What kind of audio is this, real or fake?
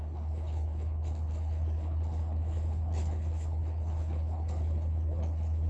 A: fake